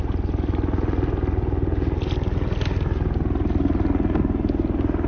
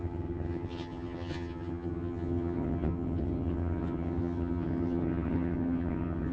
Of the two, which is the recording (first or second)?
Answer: first